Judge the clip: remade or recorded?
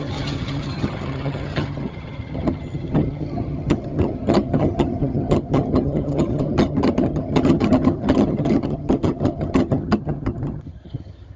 remade